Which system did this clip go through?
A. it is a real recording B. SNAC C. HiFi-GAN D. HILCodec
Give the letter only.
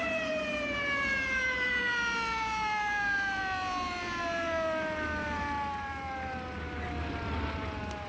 A